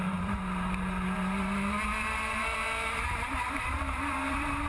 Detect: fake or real fake